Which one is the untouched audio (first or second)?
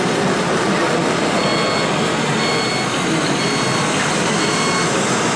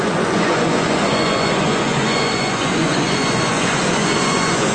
first